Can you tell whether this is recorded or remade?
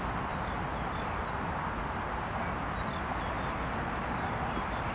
recorded